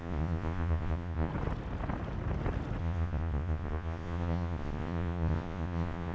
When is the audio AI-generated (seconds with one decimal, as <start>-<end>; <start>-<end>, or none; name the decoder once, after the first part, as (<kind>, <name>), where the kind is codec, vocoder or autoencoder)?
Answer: 0.0-1.3 (vocoder, Vocos); 2.8-6.1